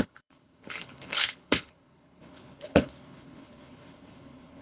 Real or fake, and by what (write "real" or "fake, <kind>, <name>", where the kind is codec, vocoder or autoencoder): fake, codec, HILCodec